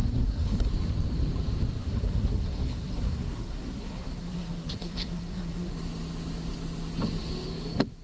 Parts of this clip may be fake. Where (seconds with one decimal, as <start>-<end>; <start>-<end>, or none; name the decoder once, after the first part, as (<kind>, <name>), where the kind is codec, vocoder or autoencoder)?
0.0-0.7 (codec, SNAC); 1.8-5.7